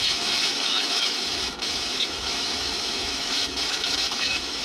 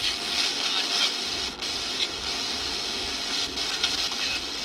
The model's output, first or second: first